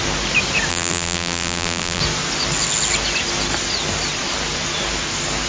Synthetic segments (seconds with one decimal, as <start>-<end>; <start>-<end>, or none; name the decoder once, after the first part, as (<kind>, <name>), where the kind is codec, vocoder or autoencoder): 0.7-2.0 (vocoder, BigVGAN v2)